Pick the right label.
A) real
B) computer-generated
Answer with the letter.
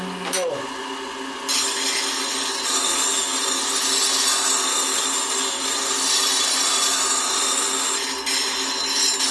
A